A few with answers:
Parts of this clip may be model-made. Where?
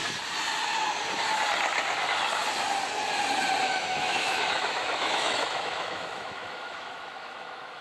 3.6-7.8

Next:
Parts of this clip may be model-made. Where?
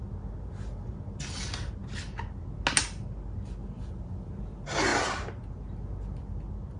none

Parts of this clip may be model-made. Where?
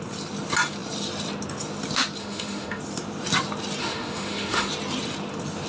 2.2-2.8; 3.8-4.7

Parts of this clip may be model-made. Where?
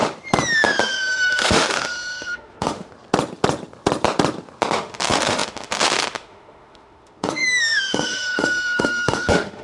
0.8-2.9; 4.7-9.6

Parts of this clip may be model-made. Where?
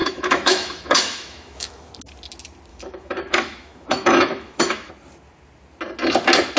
0.0-1.9; 2.7-4.9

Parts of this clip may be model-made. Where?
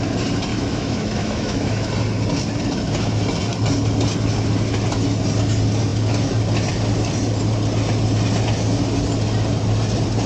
0.5-1.9